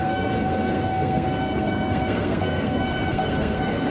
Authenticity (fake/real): fake